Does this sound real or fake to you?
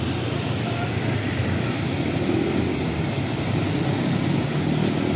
real